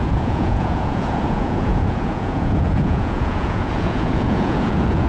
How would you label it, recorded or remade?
remade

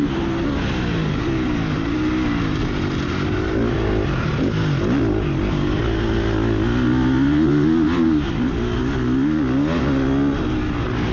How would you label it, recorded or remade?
recorded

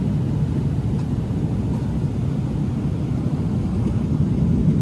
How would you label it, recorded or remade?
recorded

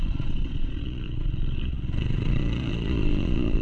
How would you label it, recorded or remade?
remade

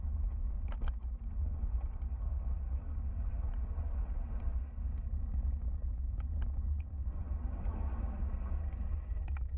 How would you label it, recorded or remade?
recorded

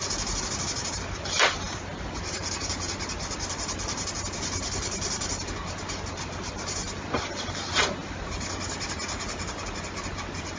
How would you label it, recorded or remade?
recorded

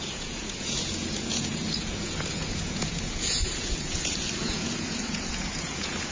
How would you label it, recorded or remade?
remade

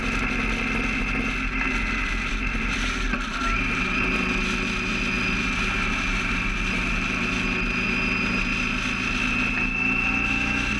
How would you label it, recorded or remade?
recorded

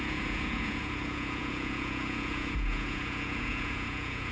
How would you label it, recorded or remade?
remade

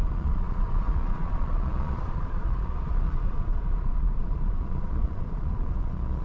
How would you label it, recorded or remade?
remade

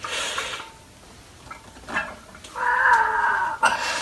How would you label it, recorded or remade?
recorded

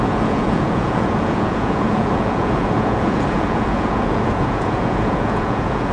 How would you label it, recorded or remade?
remade